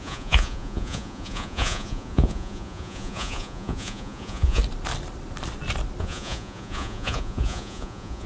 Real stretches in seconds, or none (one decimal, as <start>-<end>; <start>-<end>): 4.6-6.0